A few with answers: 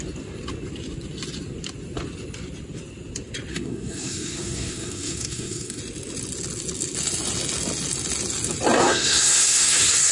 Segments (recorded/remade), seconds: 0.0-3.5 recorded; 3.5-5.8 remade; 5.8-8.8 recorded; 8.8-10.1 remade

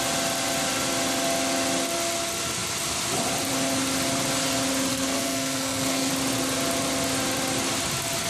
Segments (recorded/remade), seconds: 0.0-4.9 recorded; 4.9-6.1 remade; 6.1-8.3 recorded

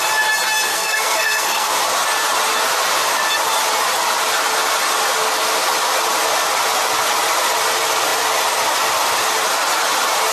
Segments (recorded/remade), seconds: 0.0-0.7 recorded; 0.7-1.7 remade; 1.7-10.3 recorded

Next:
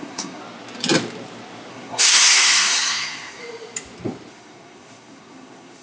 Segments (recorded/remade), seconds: 0.0-0.4 remade; 0.4-1.7 recorded; 1.7-3.4 remade; 3.4-4.3 recorded; 4.3-5.8 remade